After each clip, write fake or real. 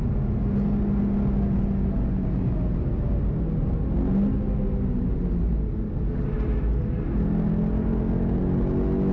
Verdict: real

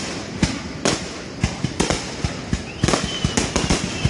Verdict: real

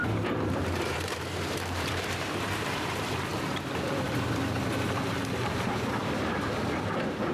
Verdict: fake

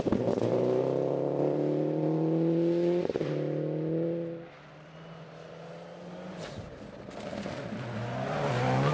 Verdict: real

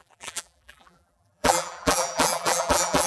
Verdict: fake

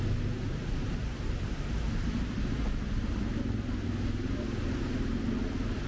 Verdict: real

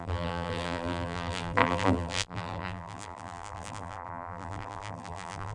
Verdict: fake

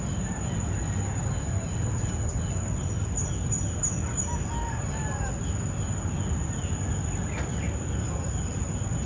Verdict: real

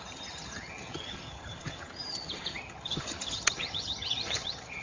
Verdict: fake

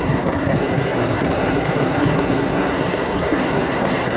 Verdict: fake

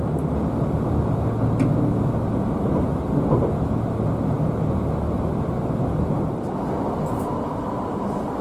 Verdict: real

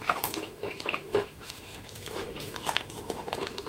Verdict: fake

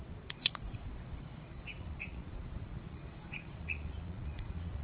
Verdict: fake